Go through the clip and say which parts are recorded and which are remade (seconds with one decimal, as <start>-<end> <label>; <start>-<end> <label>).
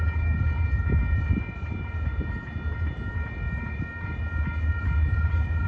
0.0-5.7 recorded